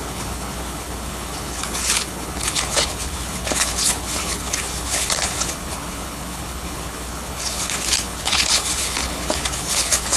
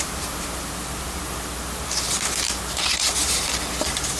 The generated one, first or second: first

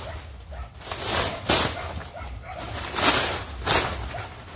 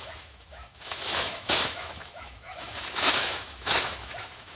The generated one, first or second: second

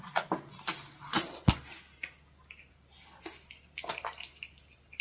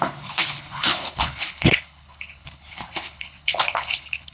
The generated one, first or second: second